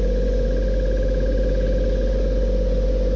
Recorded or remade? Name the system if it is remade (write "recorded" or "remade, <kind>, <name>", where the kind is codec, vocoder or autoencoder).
recorded